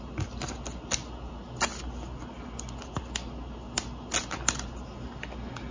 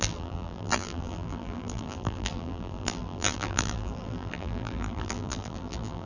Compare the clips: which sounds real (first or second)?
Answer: first